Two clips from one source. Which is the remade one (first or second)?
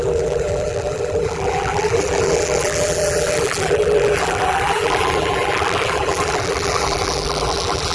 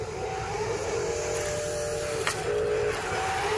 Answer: first